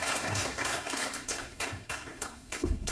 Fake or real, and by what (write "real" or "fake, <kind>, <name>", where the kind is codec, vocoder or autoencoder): fake, codec, SNAC